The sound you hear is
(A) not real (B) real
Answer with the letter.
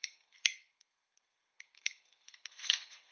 A